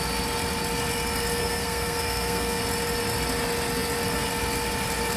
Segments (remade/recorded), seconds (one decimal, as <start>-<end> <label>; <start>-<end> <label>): 0.0-1.4 recorded; 1.4-2.6 remade; 2.6-5.2 recorded